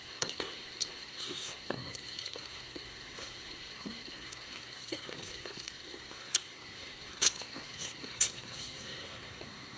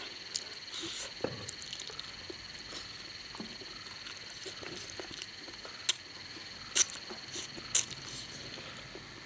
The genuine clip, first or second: second